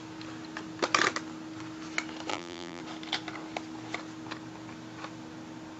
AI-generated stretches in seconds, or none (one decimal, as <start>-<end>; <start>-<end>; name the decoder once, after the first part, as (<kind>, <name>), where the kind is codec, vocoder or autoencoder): 2.3-2.8 (vocoder, BigVGAN v2)